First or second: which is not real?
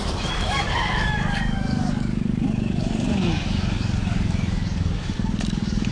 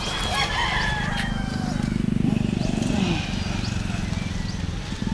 first